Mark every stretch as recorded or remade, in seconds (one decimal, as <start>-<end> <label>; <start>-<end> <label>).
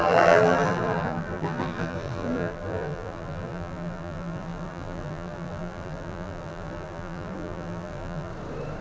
0.0-8.3 remade; 8.3-8.8 recorded